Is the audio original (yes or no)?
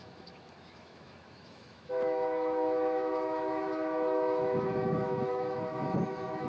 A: no